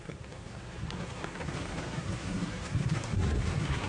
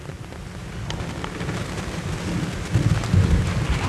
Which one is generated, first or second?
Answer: first